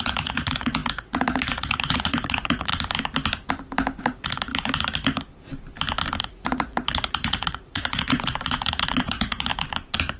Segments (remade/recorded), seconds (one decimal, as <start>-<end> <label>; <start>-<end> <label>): 0.0-2.7 remade; 2.7-4.0 recorded; 4.0-4.5 remade; 4.5-6.2 recorded; 6.2-9.5 remade; 9.5-10.2 recorded